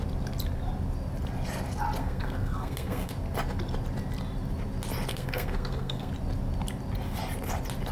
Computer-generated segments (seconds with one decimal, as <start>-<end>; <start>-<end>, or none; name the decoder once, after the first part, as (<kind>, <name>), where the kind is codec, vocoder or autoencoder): 2.0-3.1 (codec, SNAC); 5.1-6.1